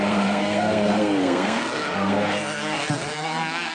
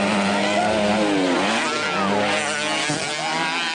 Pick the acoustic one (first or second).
second